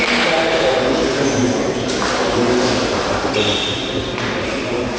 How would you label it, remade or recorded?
recorded